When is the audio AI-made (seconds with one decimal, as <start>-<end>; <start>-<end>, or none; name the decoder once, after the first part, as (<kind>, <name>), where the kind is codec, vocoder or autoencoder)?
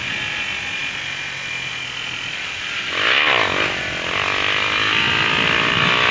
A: none